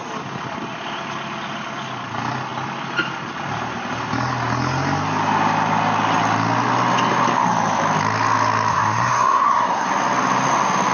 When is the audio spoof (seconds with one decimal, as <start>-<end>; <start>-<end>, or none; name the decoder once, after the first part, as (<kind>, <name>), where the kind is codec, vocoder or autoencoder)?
8.7-9.9 (codec, SNAC)